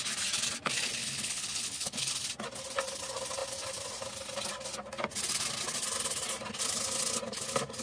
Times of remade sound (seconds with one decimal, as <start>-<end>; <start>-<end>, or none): 1.0-2.1